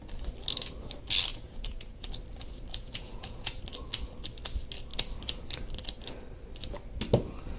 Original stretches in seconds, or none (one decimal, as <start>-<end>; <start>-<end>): 0.0-1.3; 2.1-2.7; 3.6-7.6